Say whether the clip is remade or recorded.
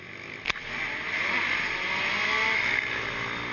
recorded